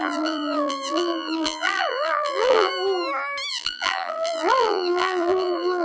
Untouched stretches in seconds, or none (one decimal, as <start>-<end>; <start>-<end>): 2.7-3.5